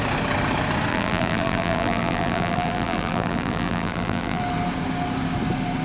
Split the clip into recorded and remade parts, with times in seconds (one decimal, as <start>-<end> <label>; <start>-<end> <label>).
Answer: 0.0-0.9 recorded; 0.9-4.4 remade; 4.4-5.8 recorded